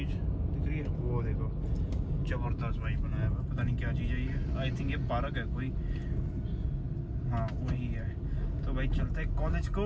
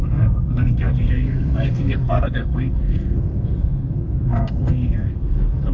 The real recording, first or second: first